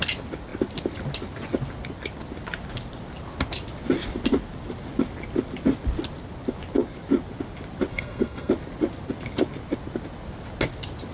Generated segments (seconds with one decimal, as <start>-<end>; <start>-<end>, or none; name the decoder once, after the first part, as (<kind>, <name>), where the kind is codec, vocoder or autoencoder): 7.9-8.5 (codec, SNAC)